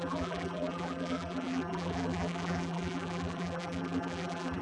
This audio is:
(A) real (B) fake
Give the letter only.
B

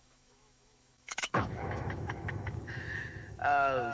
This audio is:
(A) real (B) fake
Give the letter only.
B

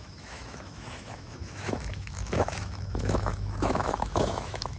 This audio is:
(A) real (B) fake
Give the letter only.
B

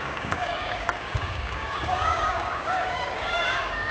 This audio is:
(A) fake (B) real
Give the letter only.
A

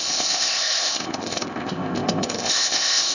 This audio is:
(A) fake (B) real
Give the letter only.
A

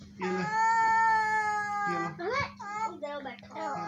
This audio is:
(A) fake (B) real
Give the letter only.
B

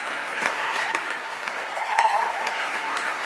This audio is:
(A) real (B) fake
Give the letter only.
B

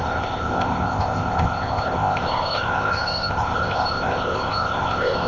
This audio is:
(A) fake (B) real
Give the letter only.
A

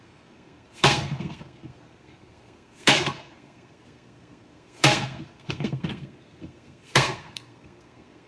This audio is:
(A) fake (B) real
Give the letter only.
A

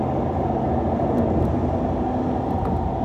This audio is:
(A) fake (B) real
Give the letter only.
B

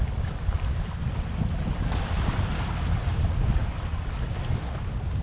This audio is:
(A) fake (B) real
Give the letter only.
B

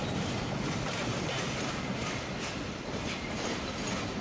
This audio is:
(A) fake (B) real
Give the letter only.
B